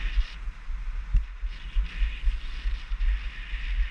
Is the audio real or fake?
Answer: real